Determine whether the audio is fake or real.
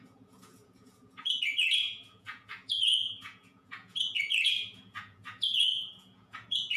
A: fake